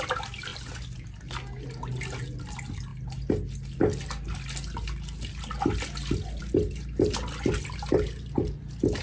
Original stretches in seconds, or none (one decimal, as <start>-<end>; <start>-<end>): 0.0-9.0